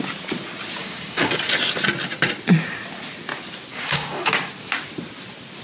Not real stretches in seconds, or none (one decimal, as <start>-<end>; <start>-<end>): 0.8-1.3; 3.7-4.3

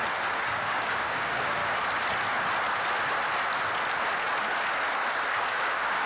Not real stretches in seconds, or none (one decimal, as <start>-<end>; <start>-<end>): 0.5-1.6; 5.3-6.1

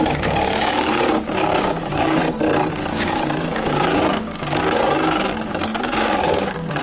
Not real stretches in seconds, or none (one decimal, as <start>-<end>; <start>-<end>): 0.0-2.2; 2.7-6.8

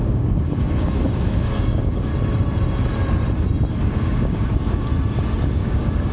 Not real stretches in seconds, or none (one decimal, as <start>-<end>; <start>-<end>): 0.0-2.1; 3.7-4.9; 5.4-6.1

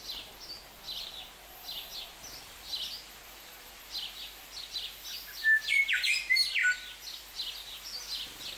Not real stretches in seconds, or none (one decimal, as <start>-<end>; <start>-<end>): none